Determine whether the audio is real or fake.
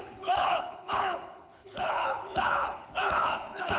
fake